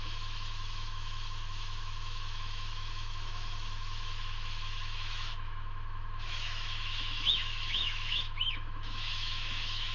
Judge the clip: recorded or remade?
remade